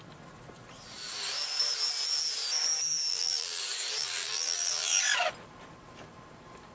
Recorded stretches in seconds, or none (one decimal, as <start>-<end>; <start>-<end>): 0.0-3.1; 3.6-4.0; 5.0-6.7